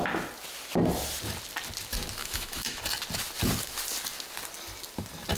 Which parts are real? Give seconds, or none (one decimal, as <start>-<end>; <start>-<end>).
0.0-2.2; 2.8-5.4